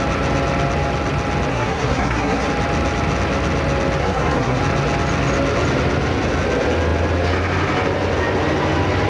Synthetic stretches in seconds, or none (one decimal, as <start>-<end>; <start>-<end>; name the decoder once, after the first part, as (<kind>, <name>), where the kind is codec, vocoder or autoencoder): 1.5-2.5 (codec, SNAC); 4.0-4.6